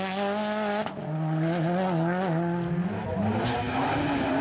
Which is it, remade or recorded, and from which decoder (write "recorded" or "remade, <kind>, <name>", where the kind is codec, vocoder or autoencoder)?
recorded